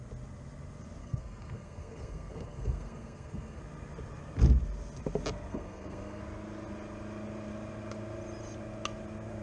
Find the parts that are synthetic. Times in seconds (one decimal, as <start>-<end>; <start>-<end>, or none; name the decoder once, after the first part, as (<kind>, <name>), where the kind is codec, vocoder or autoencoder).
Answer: 1.0-3.6 (codec, SNAC); 5.5-6.2